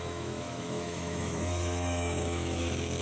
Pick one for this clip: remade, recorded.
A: remade